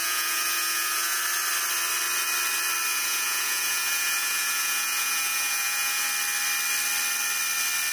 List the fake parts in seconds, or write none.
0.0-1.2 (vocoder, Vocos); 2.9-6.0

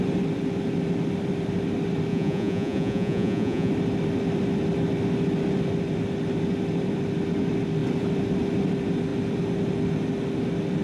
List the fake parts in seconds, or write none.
2.1-3.7 (vocoder, Vocos)

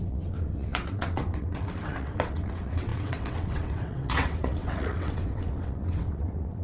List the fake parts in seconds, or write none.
0.0-6.6 (vocoder, WaveNeXt)

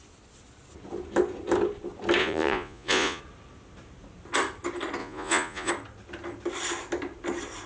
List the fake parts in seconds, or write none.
2.2-3.2 (vocoder, Vocos); 5.0-5.7

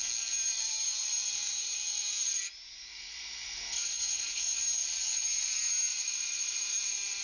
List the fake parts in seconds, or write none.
2.9-4.6 (vocoder, Vocos); 5.9-6.6

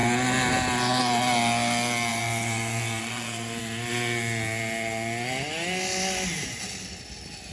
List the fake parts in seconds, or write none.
2.1-3.6 (vocoder, Vocos)

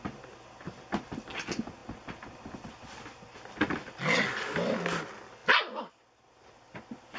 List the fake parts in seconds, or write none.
none